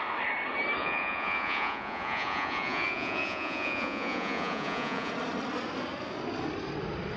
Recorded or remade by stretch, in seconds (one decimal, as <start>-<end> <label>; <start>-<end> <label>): 0.0-0.8 recorded; 0.8-5.1 remade; 5.1-7.2 recorded